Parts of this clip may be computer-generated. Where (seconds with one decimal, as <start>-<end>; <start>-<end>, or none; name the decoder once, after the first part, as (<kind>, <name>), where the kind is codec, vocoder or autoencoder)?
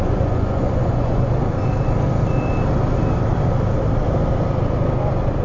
0.0-1.3 (vocoder, Vocos)